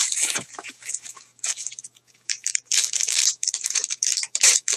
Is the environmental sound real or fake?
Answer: fake